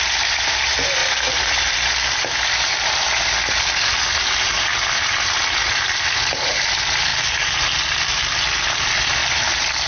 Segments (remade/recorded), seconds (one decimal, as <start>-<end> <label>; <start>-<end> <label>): 0.0-7.1 remade; 7.1-7.9 recorded; 7.9-9.2 remade; 9.2-9.9 recorded